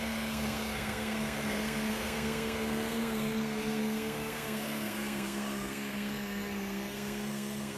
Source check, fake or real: fake